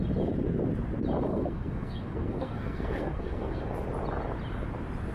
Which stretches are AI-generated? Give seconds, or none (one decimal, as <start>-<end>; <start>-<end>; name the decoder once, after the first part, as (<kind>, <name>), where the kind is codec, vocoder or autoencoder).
1.3-3.6 (codec, SNAC)